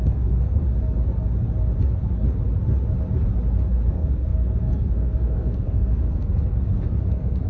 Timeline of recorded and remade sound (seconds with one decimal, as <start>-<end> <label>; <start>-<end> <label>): 0.0-0.6 remade; 0.6-3.9 recorded; 3.9-7.5 remade